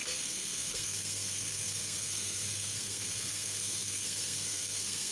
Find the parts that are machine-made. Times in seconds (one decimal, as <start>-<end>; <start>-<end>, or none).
0.0-5.1